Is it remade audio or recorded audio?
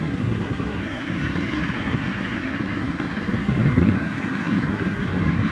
remade